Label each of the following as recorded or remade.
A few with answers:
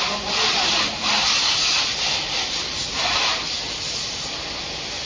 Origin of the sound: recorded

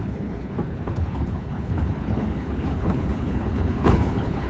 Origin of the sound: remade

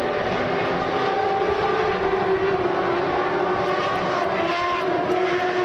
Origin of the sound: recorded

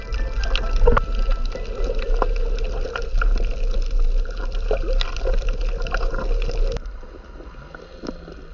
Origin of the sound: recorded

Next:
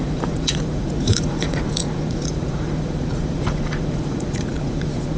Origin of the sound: remade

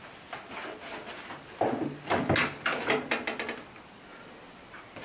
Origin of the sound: recorded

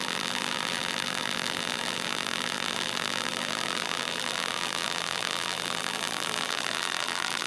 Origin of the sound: remade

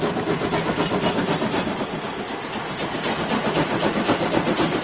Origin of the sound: recorded